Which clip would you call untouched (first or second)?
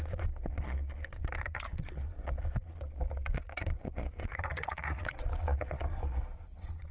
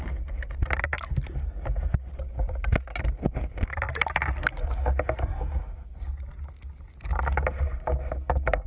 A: second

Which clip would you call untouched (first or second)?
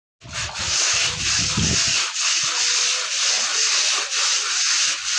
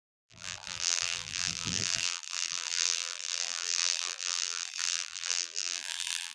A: first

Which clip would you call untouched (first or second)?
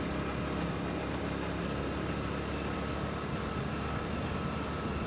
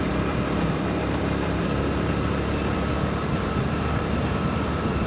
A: first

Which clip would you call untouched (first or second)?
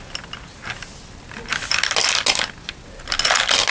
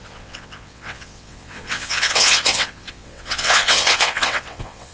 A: first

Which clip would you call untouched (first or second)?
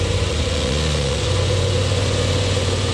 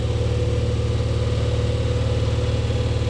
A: second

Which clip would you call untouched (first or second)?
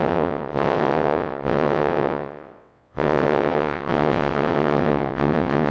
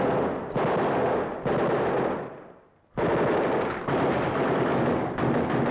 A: second